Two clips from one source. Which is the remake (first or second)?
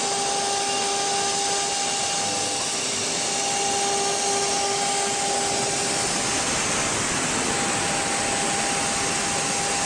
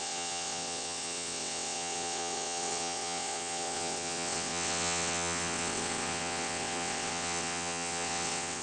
second